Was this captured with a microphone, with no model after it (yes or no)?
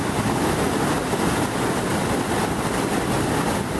yes